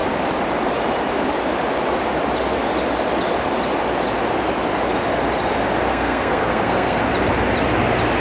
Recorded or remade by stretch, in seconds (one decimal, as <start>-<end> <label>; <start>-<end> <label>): 0.0-5.9 recorded; 5.9-7.0 remade; 7.0-8.2 recorded